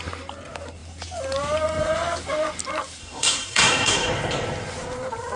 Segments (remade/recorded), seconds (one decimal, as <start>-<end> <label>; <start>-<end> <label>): 0.0-3.0 recorded; 3.0-4.1 remade; 4.1-5.4 recorded